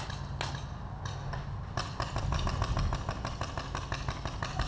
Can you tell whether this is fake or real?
real